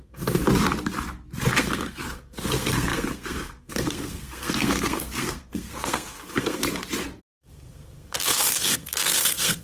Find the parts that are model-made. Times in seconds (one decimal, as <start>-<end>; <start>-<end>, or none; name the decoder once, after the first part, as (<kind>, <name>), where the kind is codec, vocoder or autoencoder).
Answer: 0.0-0.4 (codec, SNAC); 1.5-6.6; 7.2-9.6